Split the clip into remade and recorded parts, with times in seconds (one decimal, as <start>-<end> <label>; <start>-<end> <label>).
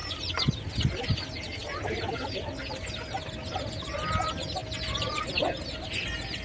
0.0-6.4 recorded